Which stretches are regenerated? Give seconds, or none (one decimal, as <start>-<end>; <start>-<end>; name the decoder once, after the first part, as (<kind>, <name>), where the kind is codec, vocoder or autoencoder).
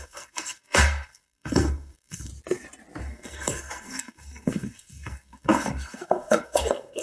0.0-2.3 (codec, SNAC); 3.0-7.0